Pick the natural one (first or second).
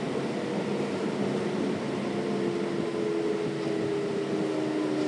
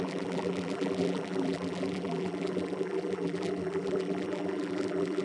first